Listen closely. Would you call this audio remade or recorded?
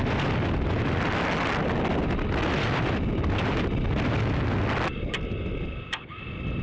recorded